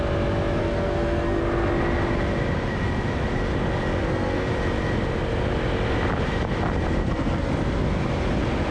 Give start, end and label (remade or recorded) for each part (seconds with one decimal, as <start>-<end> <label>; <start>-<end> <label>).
0.0-0.6 recorded; 0.6-1.4 remade; 1.4-4.0 recorded; 4.0-4.5 remade; 4.5-7.0 recorded; 7.0-7.5 remade; 7.5-8.7 recorded